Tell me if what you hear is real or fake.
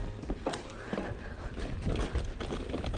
real